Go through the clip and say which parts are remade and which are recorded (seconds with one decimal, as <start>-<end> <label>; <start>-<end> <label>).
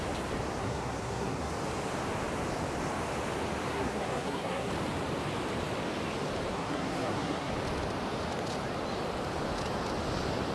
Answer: 0.0-0.6 recorded; 0.6-1.5 remade; 1.5-3.7 recorded; 3.7-4.7 remade; 4.7-6.5 recorded; 6.5-7.5 remade; 7.5-10.5 recorded